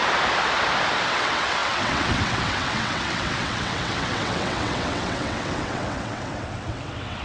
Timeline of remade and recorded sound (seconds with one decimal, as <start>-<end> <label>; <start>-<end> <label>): 0.0-1.1 recorded; 1.1-7.2 remade